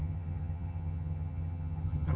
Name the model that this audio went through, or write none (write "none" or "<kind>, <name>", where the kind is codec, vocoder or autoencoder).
vocoder, HiFi-GAN